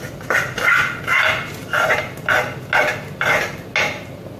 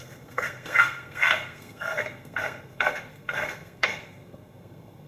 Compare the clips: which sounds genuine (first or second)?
first